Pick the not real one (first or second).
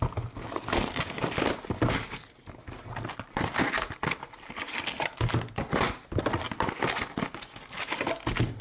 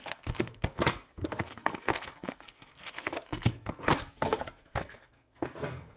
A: second